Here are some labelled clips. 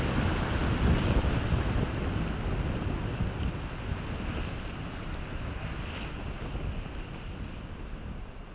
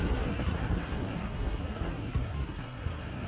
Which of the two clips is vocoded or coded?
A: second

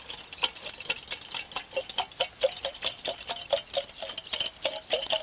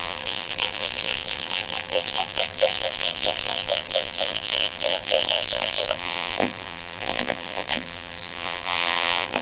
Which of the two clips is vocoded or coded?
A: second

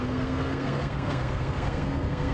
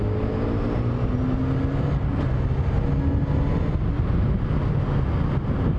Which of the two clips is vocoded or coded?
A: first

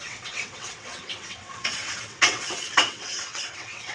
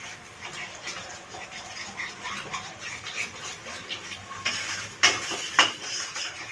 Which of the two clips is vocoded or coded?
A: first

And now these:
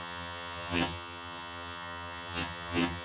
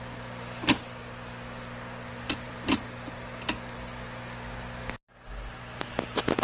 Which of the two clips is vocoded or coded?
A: first